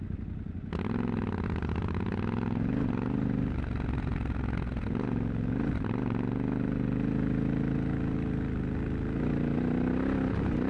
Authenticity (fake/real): real